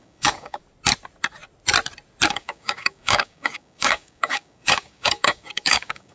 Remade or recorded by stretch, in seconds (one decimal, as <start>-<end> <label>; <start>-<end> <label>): 0.0-0.6 remade; 0.6-2.3 recorded; 2.3-6.1 remade